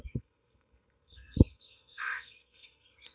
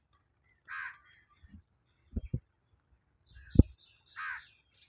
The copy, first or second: first